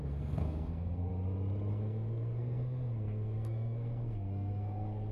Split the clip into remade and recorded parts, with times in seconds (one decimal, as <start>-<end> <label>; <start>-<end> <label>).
0.0-1.1 remade; 1.1-1.7 recorded; 1.7-5.1 remade